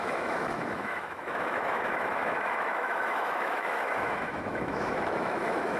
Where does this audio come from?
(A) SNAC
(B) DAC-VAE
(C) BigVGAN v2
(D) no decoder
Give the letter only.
B